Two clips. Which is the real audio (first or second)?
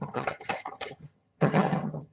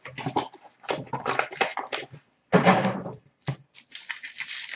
second